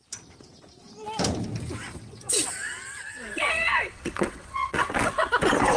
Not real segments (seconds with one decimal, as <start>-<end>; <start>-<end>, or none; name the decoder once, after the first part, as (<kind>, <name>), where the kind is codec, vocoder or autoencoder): 1.8-5.3 (vocoder, WaveNeXt)